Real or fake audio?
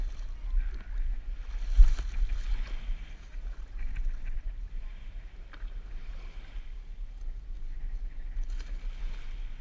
real